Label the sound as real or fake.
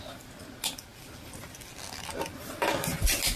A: real